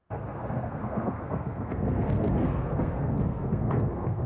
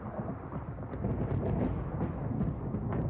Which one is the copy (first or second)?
first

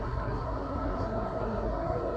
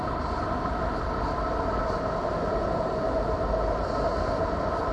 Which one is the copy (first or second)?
first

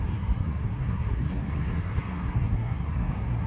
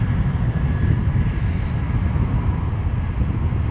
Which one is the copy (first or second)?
first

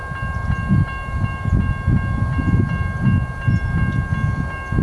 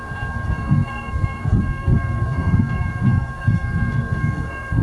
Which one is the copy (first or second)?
second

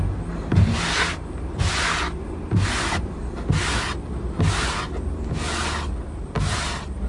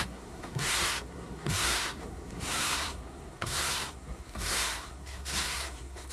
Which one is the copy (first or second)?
second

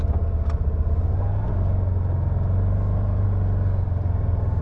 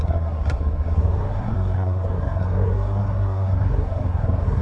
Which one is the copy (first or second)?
second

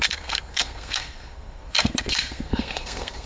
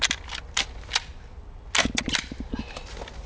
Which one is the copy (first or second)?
first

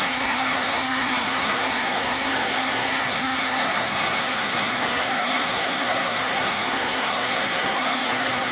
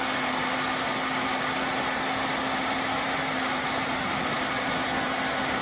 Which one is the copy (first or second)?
first